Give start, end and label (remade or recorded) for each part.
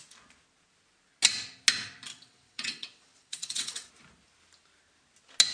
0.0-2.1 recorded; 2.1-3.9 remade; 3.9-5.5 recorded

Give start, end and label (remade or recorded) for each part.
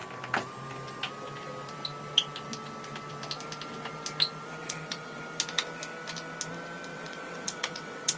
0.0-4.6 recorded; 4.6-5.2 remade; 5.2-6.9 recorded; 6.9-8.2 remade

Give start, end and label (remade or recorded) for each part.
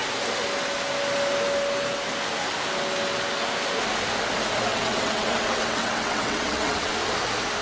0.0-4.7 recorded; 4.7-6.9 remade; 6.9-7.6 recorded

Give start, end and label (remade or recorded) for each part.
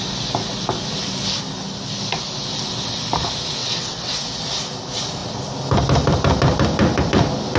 0.0-3.6 recorded; 3.6-4.1 remade; 4.1-7.6 recorded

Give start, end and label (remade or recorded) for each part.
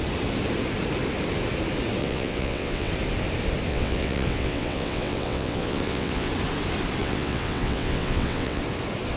0.0-2.0 recorded; 2.0-2.9 remade; 2.9-3.7 recorded; 3.7-6.3 remade; 6.3-7.0 recorded; 7.0-8.6 remade; 8.6-9.2 recorded